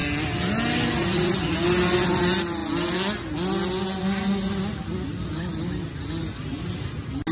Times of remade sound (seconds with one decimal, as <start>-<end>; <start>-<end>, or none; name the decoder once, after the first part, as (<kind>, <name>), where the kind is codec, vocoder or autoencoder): none